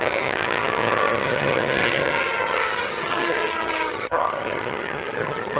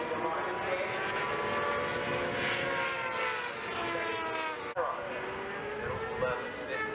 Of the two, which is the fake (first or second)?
first